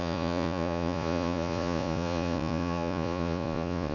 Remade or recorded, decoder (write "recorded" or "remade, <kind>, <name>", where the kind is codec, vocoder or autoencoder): remade, vocoder, Vocos